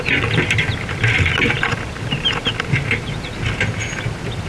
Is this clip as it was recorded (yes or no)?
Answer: yes